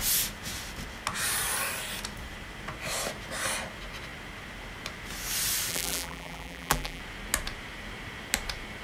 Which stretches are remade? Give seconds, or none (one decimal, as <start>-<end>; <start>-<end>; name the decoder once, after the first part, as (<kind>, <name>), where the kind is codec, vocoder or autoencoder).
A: 5.7-7.0 (vocoder, BigVGAN v2)